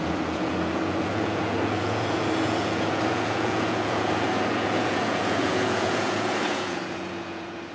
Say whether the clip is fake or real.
fake